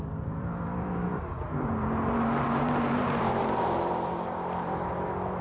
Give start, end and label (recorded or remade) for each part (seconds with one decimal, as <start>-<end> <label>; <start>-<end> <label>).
0.0-5.4 remade